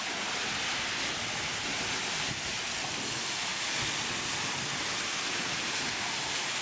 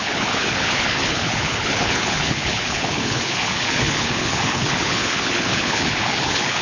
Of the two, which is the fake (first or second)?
second